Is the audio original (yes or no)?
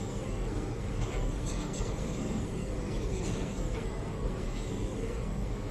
no